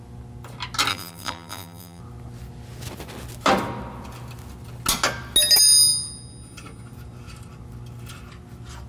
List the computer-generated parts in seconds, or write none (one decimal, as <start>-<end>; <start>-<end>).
0.9-2.0